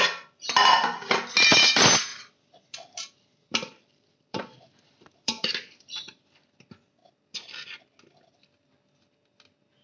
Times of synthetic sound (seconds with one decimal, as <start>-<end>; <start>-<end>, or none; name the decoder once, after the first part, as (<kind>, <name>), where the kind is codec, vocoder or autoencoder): 2.1-6.2 (vocoder, BigVGAN v2)